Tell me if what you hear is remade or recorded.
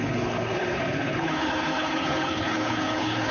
remade